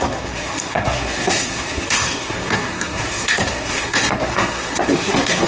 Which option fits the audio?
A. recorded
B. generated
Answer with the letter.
B